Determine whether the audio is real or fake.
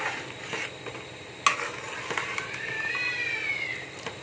real